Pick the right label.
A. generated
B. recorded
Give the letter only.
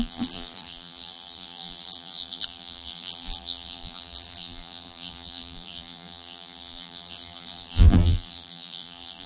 A